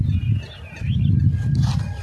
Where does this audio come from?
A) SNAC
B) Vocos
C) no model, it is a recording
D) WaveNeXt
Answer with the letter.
C